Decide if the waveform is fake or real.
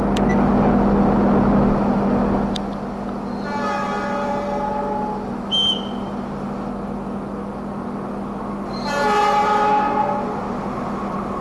real